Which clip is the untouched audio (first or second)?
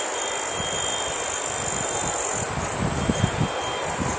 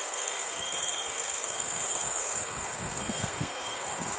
first